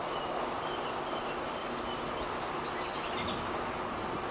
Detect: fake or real real